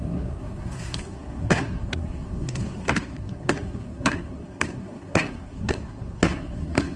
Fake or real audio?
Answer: fake